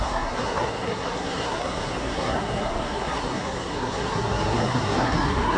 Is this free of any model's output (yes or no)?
no